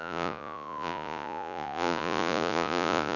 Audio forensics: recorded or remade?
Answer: remade